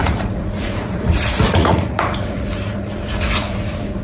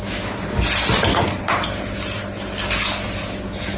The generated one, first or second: first